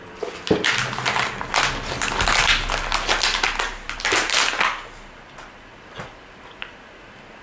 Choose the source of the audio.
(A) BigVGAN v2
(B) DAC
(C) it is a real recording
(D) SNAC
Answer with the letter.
C